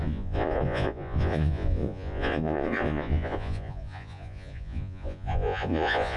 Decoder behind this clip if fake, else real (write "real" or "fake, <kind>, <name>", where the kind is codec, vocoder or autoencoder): fake, vocoder, Vocos